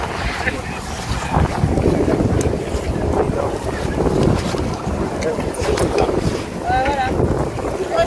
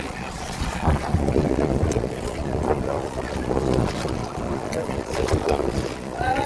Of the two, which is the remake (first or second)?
second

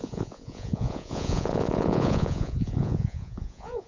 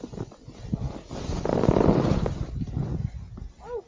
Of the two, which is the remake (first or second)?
first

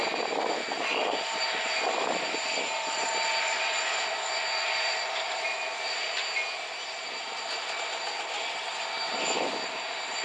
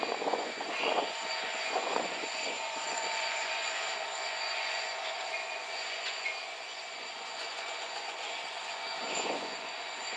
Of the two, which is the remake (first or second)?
second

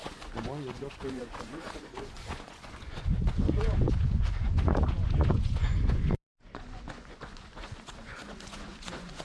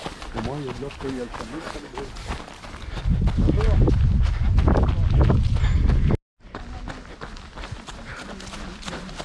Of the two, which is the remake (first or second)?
first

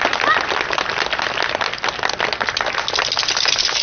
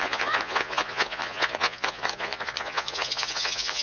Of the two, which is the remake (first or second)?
second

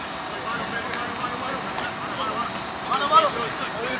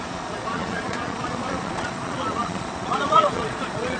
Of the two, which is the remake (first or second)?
second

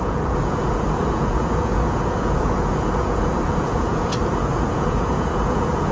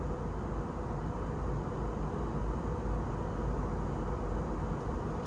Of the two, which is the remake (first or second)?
first